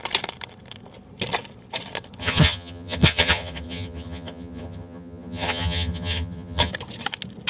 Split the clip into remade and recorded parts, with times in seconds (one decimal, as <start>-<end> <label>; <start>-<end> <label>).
0.0-2.2 recorded; 2.2-6.7 remade; 6.7-7.5 recorded